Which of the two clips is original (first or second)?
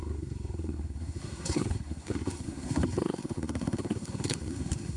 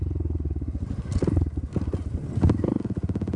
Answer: second